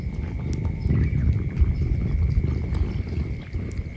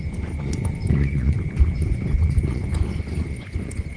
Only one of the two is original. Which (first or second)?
first